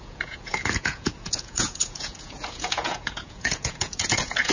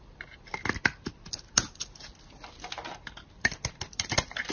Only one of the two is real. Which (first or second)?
second